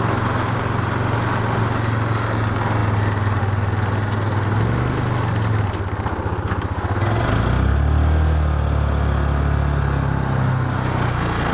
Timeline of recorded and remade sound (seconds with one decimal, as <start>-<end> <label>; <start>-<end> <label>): 0.0-11.5 recorded